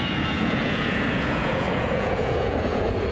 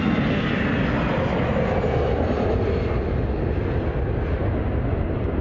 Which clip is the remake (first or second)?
first